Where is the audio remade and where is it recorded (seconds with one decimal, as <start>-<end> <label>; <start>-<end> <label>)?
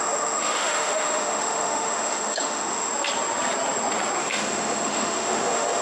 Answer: 0.0-2.9 remade; 2.9-4.2 recorded; 4.2-5.8 remade